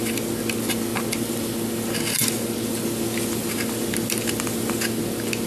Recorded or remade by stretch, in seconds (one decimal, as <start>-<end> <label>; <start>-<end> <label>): 0.0-5.5 recorded

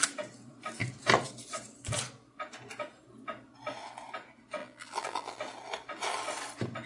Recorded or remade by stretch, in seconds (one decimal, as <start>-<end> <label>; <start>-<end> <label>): 0.0-4.6 recorded; 4.6-5.4 remade; 5.4-6.9 recorded

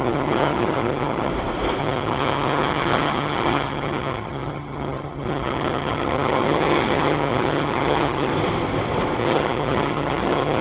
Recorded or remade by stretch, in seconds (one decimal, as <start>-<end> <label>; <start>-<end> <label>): 0.0-1.3 remade; 1.3-1.8 recorded; 1.8-8.3 remade; 8.3-9.2 recorded; 9.2-10.6 remade

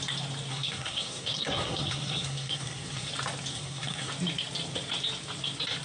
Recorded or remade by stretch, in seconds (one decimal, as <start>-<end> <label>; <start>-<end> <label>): 0.0-0.5 recorded; 0.5-3.1 remade; 3.1-3.5 recorded; 3.5-4.1 remade; 4.1-5.8 recorded

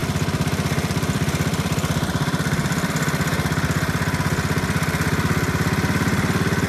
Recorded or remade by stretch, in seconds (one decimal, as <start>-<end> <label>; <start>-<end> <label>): 0.0-2.9 remade; 2.9-6.7 recorded

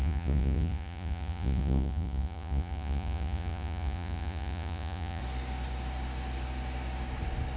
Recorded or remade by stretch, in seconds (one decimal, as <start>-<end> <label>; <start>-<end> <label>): 0.0-5.2 remade; 5.2-7.6 recorded